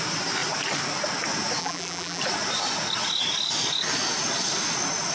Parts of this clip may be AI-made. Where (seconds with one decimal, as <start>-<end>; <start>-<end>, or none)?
1.6-2.2